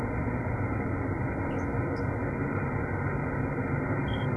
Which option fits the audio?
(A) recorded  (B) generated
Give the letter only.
A